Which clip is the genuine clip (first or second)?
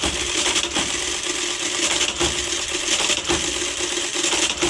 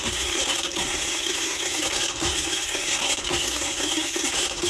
first